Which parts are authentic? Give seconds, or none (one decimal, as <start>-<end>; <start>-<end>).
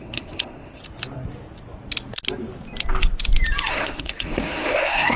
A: 0.8-3.7